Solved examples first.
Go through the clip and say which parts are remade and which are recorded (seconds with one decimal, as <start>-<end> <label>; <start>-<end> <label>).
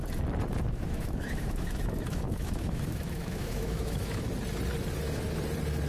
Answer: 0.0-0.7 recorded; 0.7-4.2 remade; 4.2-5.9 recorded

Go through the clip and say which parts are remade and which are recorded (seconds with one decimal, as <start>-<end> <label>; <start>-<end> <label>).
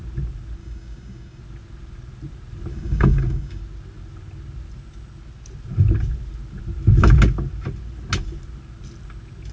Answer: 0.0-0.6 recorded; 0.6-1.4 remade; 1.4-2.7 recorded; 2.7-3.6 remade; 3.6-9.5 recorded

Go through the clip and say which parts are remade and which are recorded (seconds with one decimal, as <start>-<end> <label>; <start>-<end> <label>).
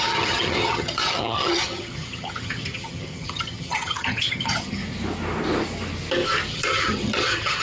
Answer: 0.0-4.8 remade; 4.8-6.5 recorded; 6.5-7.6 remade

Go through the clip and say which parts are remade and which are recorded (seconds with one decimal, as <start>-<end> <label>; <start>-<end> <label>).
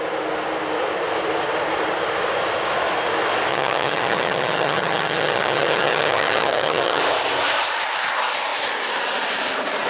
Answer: 0.0-3.5 recorded; 3.5-7.0 remade; 7.0-9.9 recorded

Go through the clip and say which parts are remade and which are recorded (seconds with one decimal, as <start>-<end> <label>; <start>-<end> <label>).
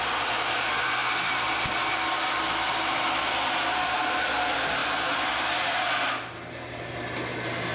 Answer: 0.0-7.7 recorded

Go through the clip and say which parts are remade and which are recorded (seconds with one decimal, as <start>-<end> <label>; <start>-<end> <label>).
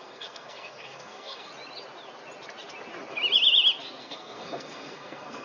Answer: 0.0-1.5 remade; 1.5-4.0 recorded; 4.0-5.4 remade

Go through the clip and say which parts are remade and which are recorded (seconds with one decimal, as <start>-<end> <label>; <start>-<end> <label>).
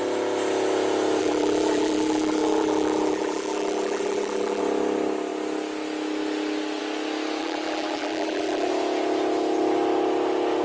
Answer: 0.0-1.2 recorded; 1.2-4.6 remade; 4.6-7.4 recorded; 7.4-8.7 remade; 8.7-10.6 recorded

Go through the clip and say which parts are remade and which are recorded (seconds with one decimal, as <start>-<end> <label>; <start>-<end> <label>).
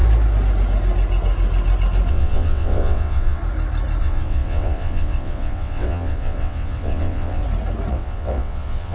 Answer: 0.0-2.1 recorded; 2.1-3.4 remade; 3.4-4.0 recorded; 4.0-7.4 remade; 7.4-7.9 recorded; 7.9-8.9 remade